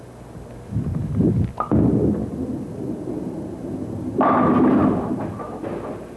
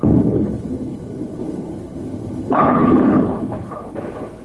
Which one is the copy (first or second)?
second